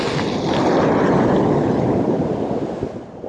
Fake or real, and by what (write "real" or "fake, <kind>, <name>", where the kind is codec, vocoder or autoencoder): real